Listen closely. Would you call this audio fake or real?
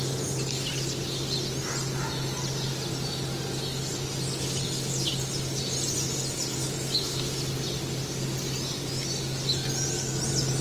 real